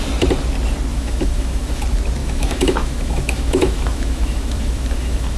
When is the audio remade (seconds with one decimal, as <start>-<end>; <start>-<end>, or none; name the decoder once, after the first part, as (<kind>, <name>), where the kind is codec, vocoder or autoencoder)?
0.9-1.8 (autoencoder, DAC-VAE); 2.2-5.4

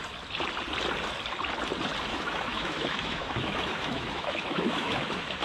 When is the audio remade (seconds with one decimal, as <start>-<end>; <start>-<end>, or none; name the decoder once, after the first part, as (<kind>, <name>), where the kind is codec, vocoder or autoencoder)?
2.1-5.4 (autoencoder, DAC-VAE)

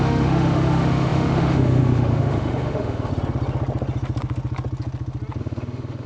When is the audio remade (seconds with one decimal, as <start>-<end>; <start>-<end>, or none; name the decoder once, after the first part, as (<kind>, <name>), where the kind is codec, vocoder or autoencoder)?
0.0-3.1 (autoencoder, DAC-VAE); 5.4-6.1